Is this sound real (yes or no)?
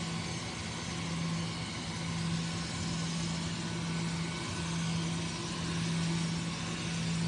yes